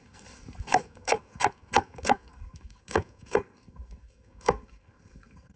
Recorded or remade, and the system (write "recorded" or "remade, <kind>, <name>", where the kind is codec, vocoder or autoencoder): remade, codec, SNAC